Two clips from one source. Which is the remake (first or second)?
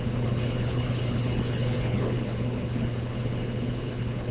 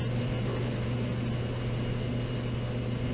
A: first